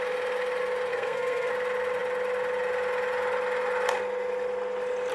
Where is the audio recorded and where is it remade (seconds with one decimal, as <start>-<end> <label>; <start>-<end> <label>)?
0.0-0.9 recorded; 0.9-1.5 remade; 1.5-5.1 recorded